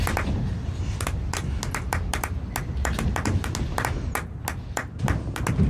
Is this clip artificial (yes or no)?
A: no